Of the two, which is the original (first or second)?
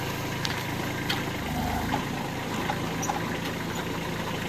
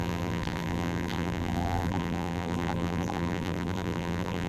first